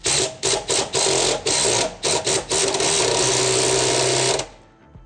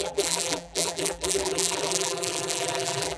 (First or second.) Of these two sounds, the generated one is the second